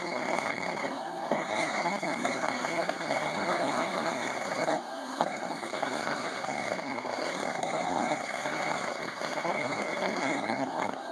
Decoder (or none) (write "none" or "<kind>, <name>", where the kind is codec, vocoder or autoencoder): codec, SNAC